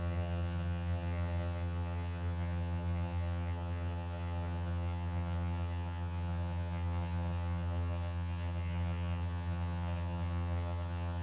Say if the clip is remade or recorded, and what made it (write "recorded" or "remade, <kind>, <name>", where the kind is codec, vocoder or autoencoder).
remade, vocoder, HiFi-GAN